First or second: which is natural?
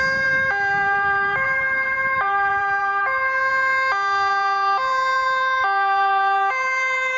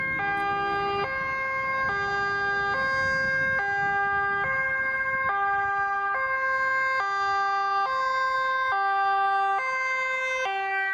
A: second